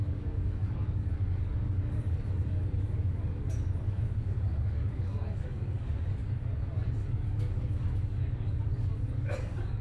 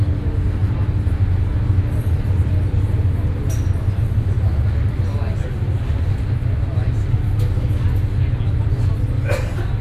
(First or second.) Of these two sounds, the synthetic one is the first